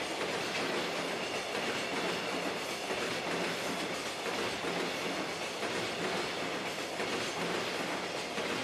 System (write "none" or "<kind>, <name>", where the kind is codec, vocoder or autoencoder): none